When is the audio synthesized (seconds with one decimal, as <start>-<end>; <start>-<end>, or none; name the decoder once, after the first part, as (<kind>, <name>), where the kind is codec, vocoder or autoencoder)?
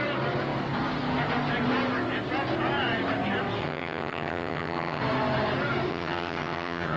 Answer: 3.6-5.0 (vocoder, HiFi-GAN); 5.9-7.0